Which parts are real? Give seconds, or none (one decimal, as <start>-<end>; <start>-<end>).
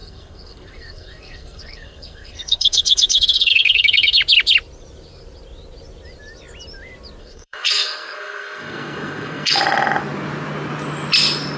4.2-7.2; 9.6-11.6